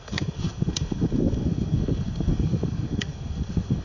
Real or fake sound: fake